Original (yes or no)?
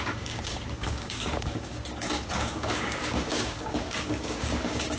no